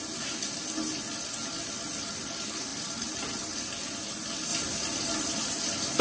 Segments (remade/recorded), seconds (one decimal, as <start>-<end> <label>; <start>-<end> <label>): 0.0-6.0 recorded